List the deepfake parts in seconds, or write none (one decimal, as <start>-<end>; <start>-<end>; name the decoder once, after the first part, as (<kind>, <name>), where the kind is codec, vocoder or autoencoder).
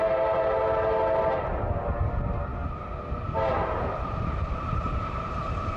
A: 0.0-2.5 (vocoder, BigVGAN v2); 3.5-5.8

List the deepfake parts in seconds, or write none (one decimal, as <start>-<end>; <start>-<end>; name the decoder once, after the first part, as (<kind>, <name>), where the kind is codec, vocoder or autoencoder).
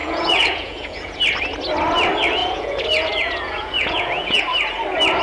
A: 0.0-1.2 (vocoder, Vocos); 2.4-4.4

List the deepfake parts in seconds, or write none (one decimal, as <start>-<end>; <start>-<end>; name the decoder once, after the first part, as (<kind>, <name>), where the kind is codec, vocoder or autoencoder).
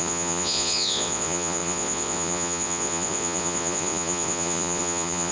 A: 0.0-5.3 (vocoder, Vocos)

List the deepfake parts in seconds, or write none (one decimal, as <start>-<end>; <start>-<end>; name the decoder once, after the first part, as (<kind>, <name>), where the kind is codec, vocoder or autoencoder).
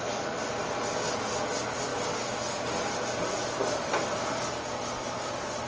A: none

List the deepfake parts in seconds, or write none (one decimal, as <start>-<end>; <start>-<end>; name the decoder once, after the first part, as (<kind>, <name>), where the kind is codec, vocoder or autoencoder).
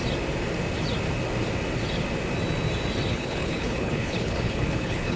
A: 3.1-5.2 (codec, HILCodec)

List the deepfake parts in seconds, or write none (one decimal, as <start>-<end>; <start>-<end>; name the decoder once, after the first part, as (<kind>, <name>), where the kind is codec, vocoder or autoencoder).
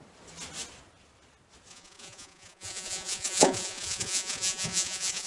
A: 1.7-5.3 (vocoder, Vocos)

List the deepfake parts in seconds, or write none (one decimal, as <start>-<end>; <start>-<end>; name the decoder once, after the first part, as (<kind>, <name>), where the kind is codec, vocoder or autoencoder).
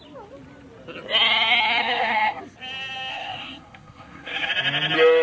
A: 1.8-2.4 (codec, SNAC); 3.1-4.5